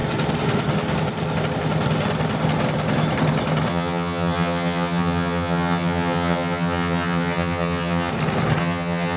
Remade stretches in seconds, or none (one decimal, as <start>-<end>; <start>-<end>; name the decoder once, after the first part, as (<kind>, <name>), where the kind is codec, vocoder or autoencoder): 3.7-8.1 (vocoder, HiFi-GAN); 8.6-9.2

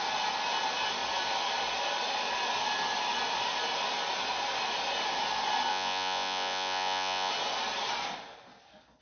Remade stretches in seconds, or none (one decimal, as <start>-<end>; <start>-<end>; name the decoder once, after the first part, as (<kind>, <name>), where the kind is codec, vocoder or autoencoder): 5.7-7.3 (vocoder, Vocos)

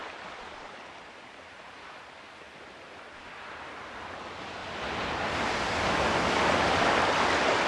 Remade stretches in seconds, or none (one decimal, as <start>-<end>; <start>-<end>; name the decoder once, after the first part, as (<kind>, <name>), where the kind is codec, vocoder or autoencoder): 0.0-3.7 (vocoder, BigVGAN v2); 4.6-6.9